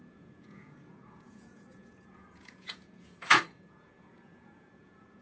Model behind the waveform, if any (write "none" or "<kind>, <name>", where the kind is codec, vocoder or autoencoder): vocoder, Vocos